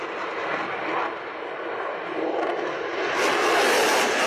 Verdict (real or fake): real